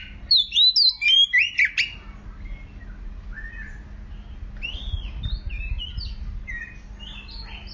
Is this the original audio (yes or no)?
yes